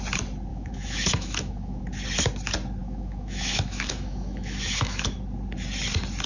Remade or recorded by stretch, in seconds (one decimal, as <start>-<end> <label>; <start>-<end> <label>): 0.0-0.5 recorded; 0.5-1.8 remade; 1.8-2.8 recorded; 2.8-5.2 remade; 5.2-6.3 recorded